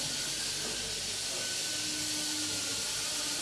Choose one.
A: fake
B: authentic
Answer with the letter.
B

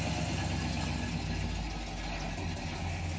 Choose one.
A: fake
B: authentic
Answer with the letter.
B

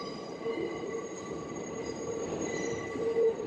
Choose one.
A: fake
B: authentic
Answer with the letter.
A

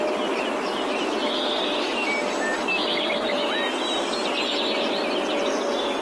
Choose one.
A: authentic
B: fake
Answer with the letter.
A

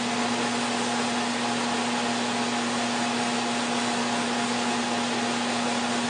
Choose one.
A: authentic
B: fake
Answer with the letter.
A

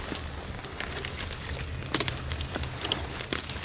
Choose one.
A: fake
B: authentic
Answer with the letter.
B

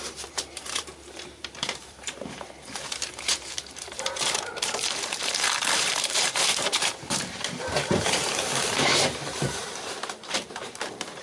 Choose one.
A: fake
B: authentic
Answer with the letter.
A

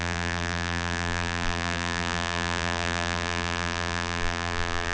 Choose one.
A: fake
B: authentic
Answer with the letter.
A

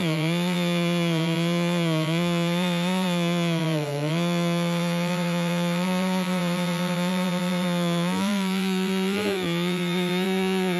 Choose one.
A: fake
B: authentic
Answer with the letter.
A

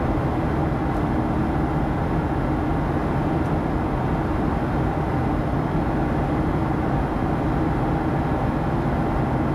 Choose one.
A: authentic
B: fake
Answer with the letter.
A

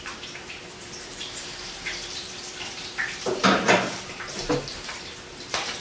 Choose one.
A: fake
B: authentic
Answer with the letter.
A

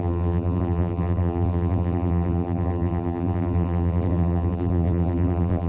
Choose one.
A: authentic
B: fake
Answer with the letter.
B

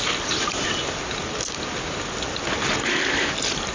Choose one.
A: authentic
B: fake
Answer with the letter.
A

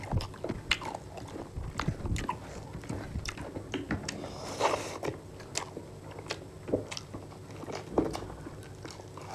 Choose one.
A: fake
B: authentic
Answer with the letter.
B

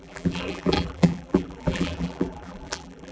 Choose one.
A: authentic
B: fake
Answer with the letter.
B